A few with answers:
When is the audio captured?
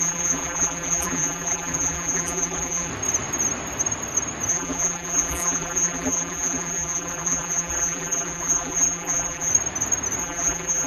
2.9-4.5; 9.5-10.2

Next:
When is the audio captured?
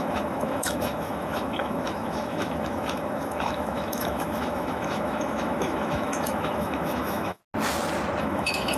7.4-8.2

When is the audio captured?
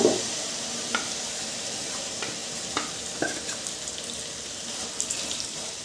2.4-5.0